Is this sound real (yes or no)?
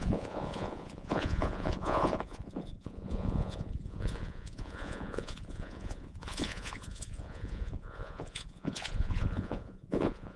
no